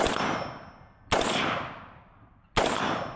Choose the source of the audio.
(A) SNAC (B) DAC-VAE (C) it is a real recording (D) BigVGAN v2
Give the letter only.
C